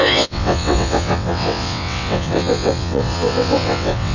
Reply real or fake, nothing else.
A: fake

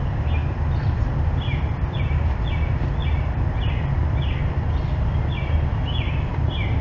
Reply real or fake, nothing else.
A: real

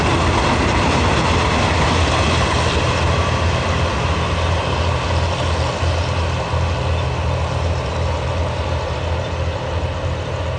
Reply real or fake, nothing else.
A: real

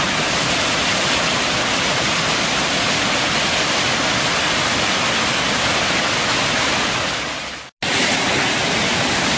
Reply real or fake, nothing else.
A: real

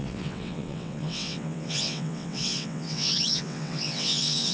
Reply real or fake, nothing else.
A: fake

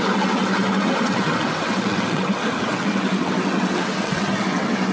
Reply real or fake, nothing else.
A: fake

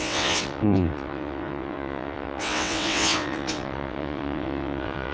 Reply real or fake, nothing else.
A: fake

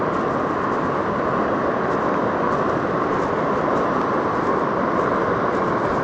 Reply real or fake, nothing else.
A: real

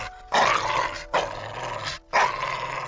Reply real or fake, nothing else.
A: real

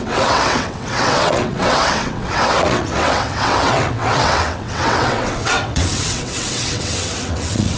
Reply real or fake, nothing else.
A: fake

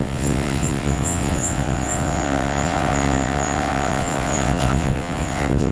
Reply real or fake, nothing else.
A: fake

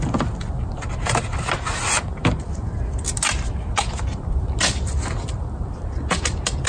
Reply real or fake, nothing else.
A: real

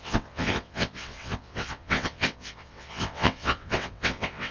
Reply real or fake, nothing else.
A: fake